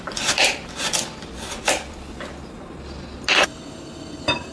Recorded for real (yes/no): yes